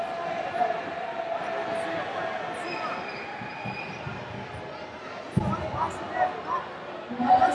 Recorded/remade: recorded